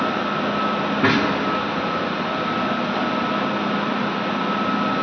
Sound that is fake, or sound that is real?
real